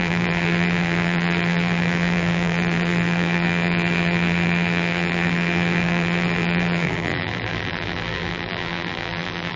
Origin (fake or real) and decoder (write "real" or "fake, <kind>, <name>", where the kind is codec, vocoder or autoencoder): fake, vocoder, BigVGAN v2